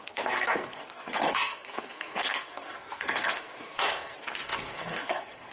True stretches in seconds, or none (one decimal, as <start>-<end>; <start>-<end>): none